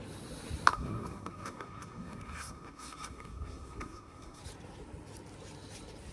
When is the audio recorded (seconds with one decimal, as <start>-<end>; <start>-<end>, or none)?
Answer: 0.0-0.7; 4.4-6.1